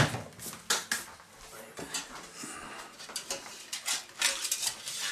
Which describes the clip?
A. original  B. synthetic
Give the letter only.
A